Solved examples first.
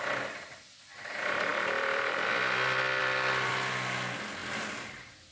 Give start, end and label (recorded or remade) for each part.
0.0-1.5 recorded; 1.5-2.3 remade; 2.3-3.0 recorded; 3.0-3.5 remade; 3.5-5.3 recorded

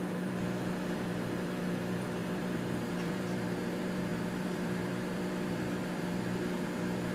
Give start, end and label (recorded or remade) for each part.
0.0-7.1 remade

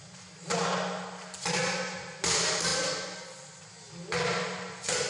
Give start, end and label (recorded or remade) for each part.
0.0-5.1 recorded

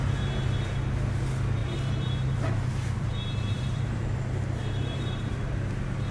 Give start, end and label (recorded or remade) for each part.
0.0-1.6 recorded; 1.6-5.3 remade; 5.3-6.1 recorded

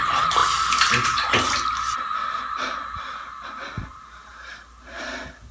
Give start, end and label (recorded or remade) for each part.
0.0-4.3 recorded; 4.3-5.1 remade; 5.1-5.5 recorded

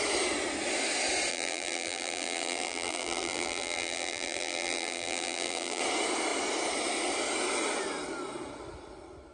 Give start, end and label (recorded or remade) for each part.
0.0-1.3 recorded; 1.3-5.8 remade; 5.8-9.3 recorded